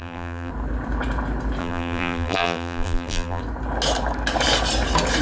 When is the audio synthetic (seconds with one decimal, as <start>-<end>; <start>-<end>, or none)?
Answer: 0.0-0.5; 1.6-3.4